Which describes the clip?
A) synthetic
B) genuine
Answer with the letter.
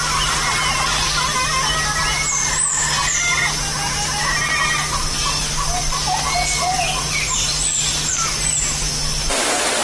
B